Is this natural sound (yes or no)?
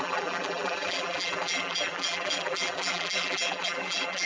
no